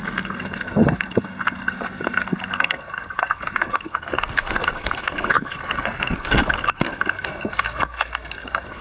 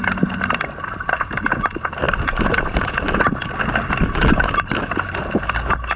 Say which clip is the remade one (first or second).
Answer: first